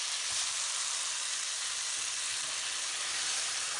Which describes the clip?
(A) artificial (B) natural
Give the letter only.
B